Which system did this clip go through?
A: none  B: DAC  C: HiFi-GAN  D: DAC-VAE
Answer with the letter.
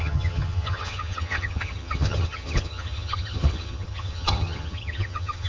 C